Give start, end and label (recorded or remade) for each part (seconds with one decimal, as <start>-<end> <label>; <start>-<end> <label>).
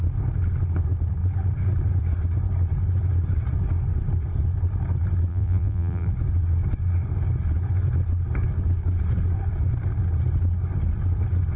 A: 0.0-5.3 recorded; 5.3-6.1 remade; 6.1-11.6 recorded